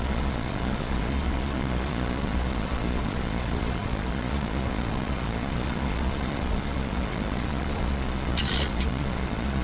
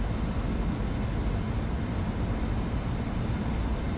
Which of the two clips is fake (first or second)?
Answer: first